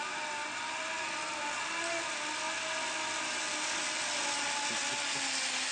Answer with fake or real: real